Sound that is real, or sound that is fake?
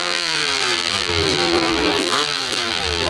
fake